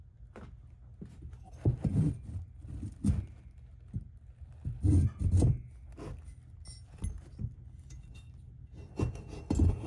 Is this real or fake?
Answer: real